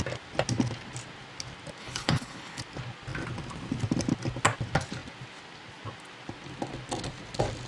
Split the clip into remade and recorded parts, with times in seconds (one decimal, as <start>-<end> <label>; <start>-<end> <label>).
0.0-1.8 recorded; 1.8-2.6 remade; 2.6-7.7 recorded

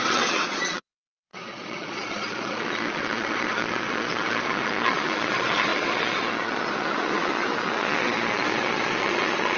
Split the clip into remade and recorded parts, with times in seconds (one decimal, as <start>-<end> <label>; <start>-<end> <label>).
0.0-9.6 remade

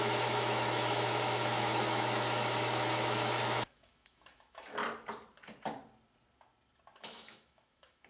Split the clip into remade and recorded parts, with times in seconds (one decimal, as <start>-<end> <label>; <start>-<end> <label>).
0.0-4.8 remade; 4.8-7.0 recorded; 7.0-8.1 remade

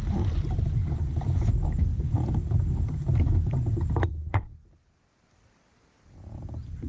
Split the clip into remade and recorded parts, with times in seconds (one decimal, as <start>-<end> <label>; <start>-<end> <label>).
0.0-4.1 recorded; 4.1-4.5 remade; 4.5-6.9 recorded